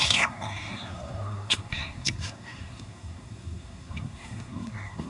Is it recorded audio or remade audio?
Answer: remade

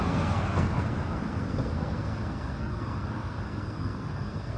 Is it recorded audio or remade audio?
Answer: remade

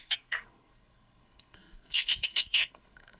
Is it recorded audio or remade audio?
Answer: remade